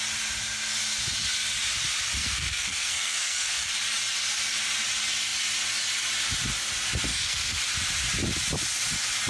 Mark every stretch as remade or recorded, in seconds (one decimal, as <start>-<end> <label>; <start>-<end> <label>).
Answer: 0.0-2.2 recorded; 2.2-3.7 remade; 3.7-7.1 recorded; 7.1-7.6 remade; 7.6-9.3 recorded

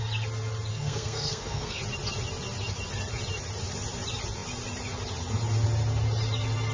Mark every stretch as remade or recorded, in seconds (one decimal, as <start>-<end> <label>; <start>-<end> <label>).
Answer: 0.0-0.7 recorded; 0.7-1.8 remade; 1.8-6.7 recorded